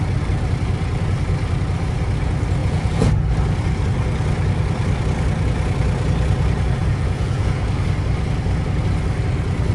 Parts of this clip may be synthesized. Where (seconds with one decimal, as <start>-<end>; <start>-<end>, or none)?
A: 2.6-3.1; 6.8-7.7